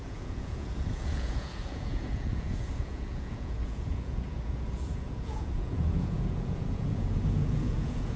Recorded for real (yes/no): no